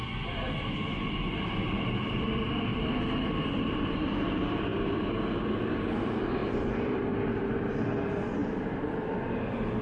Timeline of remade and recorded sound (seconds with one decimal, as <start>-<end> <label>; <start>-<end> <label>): 0.0-2.7 recorded; 2.7-4.0 remade; 4.0-6.4 recorded; 6.4-7.3 remade; 7.3-8.4 recorded; 8.4-8.9 remade; 8.9-9.8 recorded